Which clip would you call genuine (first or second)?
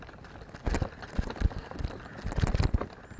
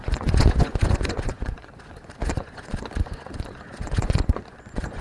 first